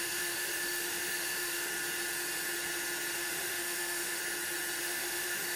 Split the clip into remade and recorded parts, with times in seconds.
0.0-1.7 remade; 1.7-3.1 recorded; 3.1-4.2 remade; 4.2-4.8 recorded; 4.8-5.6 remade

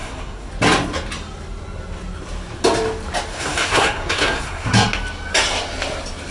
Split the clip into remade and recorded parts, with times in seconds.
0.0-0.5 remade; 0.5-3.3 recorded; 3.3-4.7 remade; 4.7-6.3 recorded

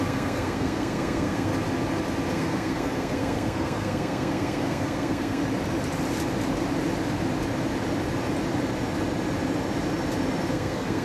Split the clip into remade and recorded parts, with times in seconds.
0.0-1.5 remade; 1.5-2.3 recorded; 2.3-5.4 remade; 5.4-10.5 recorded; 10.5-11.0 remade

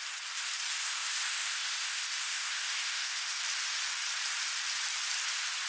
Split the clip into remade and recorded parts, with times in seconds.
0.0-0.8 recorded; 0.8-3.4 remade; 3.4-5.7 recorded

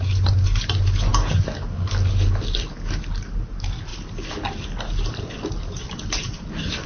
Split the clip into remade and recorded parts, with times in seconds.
0.0-6.9 recorded

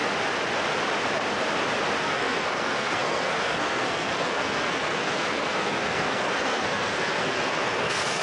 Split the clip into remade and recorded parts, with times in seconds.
0.0-2.0 recorded; 2.0-8.2 remade